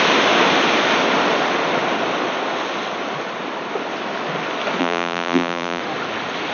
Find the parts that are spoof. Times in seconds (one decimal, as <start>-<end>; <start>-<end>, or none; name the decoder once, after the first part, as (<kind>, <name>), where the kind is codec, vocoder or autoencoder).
4.8-5.8 (vocoder, BigVGAN v2)